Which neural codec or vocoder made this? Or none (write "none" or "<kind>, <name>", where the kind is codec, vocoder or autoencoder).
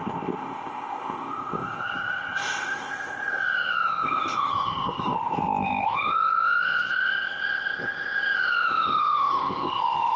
codec, ZipCodec